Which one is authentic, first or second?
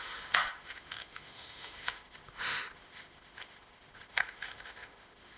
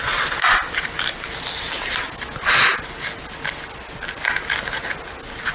second